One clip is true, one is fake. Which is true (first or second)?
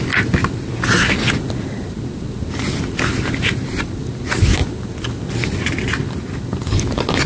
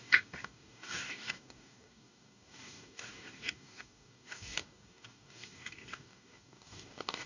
first